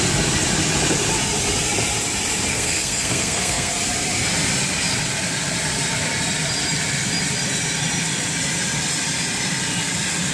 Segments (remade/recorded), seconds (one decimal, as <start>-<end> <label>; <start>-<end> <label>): 0.0-2.5 recorded; 2.5-3.7 remade; 3.7-10.3 recorded